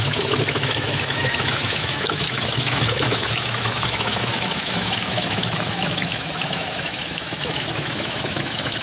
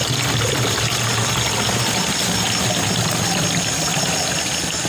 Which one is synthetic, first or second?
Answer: first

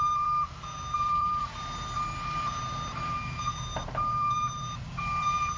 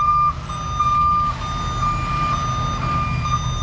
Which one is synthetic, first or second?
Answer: first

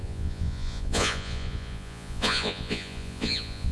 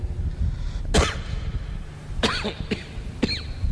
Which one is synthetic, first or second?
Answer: first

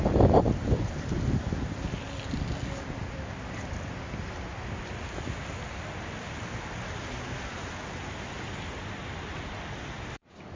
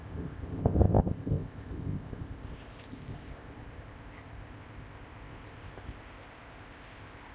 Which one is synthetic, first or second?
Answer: second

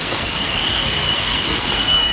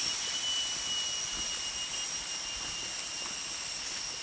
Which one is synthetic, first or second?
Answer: first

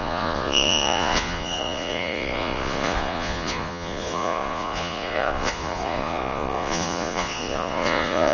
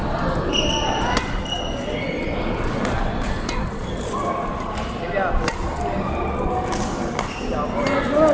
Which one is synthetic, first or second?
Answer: first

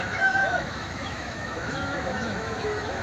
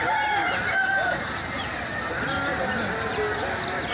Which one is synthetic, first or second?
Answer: first